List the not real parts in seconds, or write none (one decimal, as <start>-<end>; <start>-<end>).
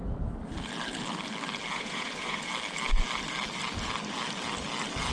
1.7-2.5